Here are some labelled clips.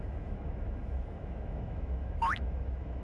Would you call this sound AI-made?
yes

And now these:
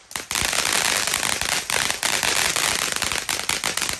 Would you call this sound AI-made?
no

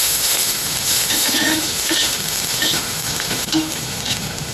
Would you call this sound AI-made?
yes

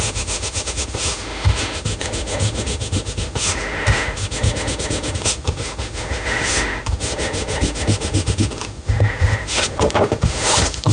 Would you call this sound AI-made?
yes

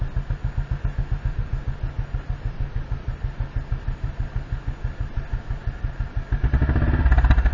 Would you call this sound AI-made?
no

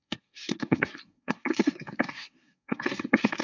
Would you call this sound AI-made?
yes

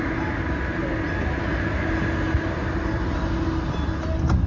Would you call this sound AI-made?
no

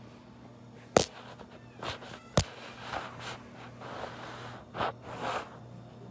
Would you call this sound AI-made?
no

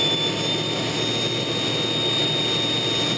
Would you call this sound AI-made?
no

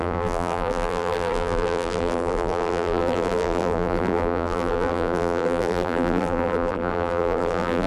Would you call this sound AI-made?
yes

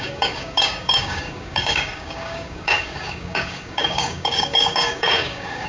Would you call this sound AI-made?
yes